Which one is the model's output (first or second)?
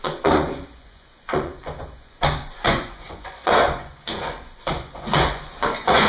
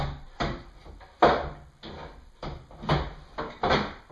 first